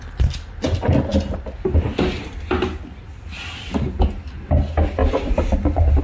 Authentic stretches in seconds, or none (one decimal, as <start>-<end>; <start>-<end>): 0.0-5.0